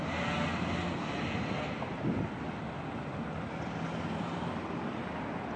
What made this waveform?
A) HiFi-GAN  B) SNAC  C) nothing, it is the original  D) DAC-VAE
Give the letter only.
C